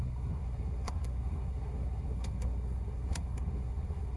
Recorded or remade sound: remade